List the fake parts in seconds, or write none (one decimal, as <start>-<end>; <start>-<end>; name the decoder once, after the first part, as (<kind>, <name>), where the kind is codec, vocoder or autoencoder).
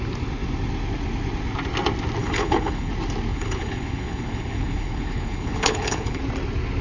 2.2-2.9 (codec, HILCodec); 3.3-6.2